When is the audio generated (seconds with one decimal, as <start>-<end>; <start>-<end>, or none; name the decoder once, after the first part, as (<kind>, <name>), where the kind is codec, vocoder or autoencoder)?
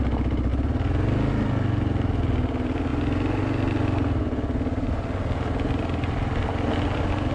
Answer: none